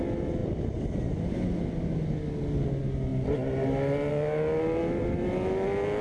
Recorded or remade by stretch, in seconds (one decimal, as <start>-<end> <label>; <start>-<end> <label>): 0.0-6.0 recorded